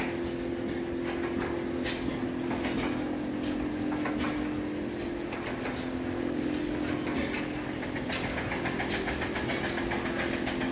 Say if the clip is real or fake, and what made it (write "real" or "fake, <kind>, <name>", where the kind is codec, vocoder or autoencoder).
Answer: real